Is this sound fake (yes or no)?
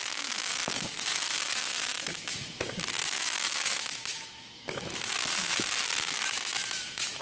yes